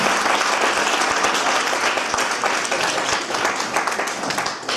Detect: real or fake real